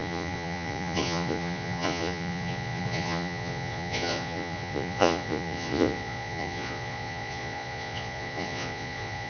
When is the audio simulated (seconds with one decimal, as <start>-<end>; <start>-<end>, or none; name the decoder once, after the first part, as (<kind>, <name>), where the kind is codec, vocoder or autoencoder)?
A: 0.0-9.3 (vocoder, Vocos)